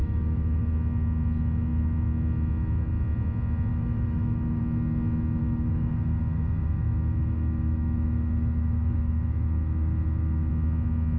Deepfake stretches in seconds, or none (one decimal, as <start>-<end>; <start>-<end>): 0.0-0.6; 3.7-4.6; 5.4-10.5